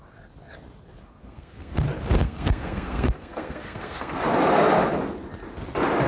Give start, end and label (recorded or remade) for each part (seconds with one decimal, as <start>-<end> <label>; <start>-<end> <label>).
0.0-1.0 recorded; 1.0-1.8 remade; 1.8-2.2 recorded; 2.2-4.2 remade; 4.2-6.1 recorded